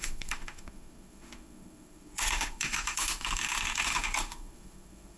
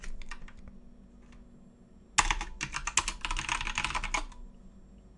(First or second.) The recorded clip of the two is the second